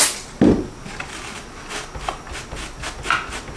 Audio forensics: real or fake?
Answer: real